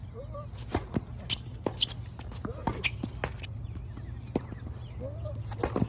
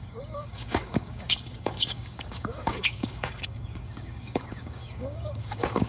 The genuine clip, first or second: first